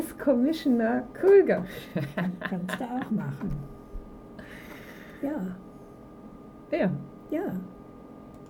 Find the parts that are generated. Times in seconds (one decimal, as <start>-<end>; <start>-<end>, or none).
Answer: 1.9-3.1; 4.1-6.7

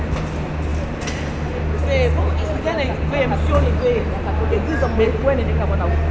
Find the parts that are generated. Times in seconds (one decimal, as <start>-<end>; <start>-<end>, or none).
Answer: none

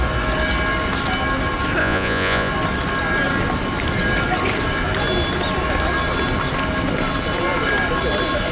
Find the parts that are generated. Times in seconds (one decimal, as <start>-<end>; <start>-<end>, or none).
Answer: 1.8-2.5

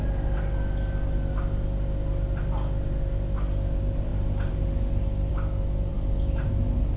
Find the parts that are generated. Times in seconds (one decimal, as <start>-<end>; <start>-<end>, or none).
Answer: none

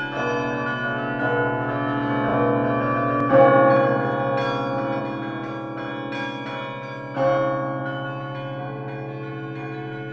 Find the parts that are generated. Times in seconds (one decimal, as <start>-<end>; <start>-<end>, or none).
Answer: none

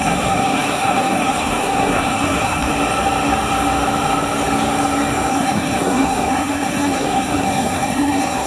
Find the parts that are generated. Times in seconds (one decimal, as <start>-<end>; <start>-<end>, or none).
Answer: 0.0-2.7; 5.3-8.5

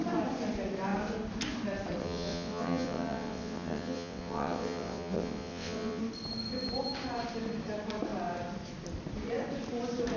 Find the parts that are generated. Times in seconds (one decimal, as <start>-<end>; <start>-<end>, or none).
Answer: 2.0-6.0

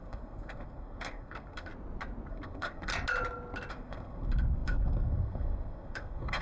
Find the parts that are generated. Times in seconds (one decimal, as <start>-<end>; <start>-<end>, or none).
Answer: 0.0-1.7; 2.3-2.9; 3.7-6.4